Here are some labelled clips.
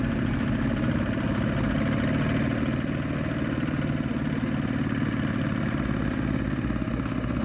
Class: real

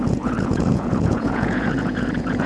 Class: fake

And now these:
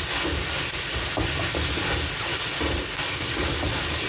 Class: real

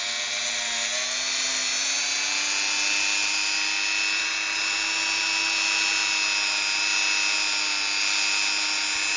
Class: real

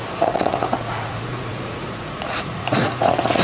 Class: fake